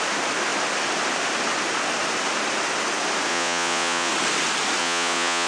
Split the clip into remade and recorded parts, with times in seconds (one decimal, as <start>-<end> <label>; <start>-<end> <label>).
0.0-3.3 recorded; 3.3-4.1 remade; 4.1-4.8 recorded; 4.8-5.5 remade